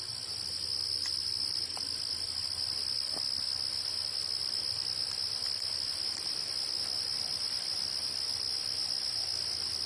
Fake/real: real